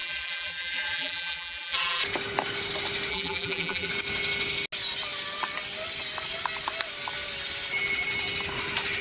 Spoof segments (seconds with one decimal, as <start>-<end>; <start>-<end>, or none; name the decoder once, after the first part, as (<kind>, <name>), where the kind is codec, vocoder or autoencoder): 0.0-2.0 (vocoder, BigVGAN v2); 3.1-3.9